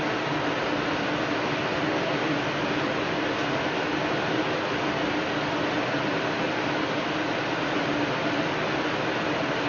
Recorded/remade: recorded